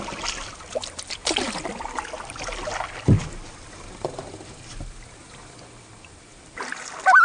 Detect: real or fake real